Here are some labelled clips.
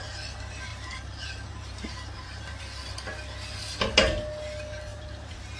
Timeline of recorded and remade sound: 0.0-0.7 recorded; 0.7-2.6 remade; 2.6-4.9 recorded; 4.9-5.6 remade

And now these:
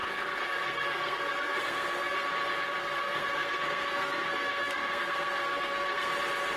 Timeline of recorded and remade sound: 0.0-2.3 remade; 2.3-2.8 recorded; 2.8-6.1 remade; 6.1-6.6 recorded